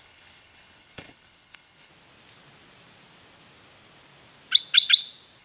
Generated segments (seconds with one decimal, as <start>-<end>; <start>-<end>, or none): 0.0-1.9